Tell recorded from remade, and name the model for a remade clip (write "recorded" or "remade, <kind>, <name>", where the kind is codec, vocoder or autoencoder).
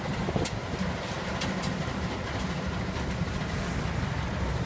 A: recorded